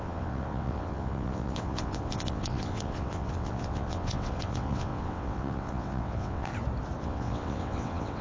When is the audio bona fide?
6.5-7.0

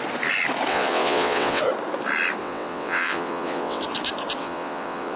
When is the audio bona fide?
0.0-0.7; 1.6-2.4; 3.8-4.4